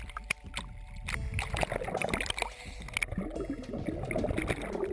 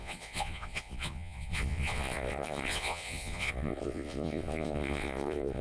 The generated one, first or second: second